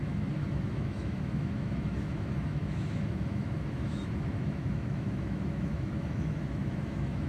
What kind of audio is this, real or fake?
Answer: fake